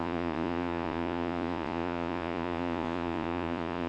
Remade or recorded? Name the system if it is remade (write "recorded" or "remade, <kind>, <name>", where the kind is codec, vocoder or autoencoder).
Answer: remade, vocoder, Vocos